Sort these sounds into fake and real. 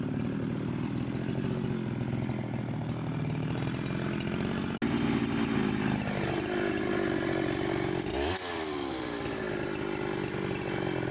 real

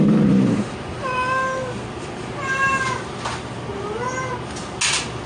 real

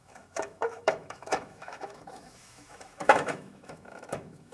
fake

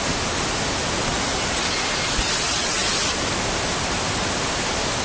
real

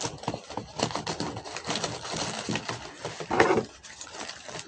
real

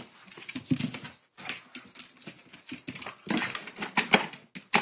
real